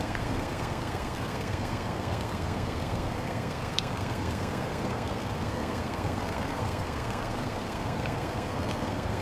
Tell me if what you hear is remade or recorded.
remade